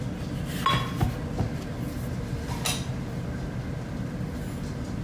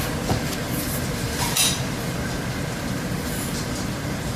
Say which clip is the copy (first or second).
second